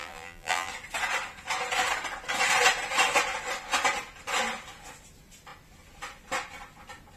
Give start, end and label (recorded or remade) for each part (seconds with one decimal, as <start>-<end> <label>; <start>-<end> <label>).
0.0-0.7 remade; 0.7-7.2 recorded